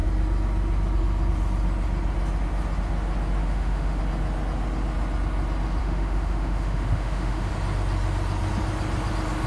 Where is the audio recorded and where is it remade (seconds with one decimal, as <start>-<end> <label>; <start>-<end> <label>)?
0.0-3.4 recorded; 3.4-4.0 remade; 4.0-5.8 recorded; 5.8-7.5 remade; 7.5-9.5 recorded